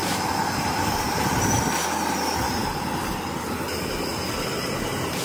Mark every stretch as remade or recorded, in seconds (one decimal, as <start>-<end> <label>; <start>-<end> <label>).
0.0-1.7 remade; 1.7-5.2 recorded